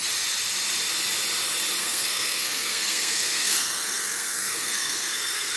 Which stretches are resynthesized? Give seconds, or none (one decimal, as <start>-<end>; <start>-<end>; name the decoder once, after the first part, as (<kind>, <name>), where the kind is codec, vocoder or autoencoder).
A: 1.8-5.6 (codec, SNAC)